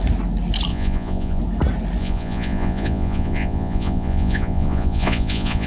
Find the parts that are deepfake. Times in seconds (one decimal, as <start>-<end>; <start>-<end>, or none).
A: 0.7-1.4; 2.0-5.7